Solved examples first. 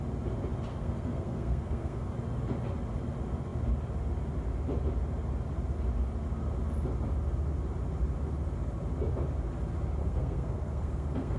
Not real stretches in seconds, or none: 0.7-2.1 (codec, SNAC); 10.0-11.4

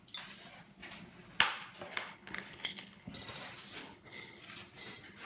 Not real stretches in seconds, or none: 1.9-3.1 (codec, HILCodec); 3.8-4.4

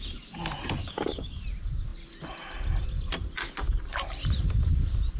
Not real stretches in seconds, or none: 0.8-1.4 (codec, DAC)

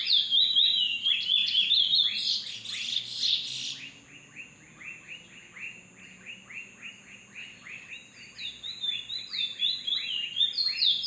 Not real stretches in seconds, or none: 7.4-7.9 (vocoder, WaveNeXt)

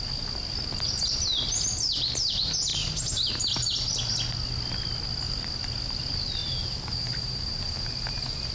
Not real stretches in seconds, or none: 2.7-3.3 (vocoder, BigVGAN v2); 6.4-8.5

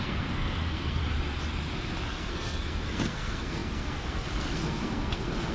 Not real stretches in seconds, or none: 0.0-1.0 (codec, SNAC); 2.0-5.5

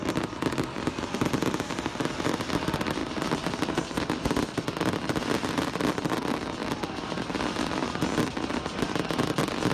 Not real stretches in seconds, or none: none